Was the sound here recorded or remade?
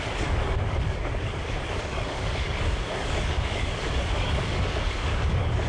remade